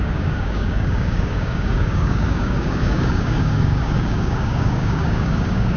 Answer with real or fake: fake